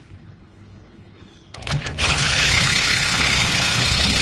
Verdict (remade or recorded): remade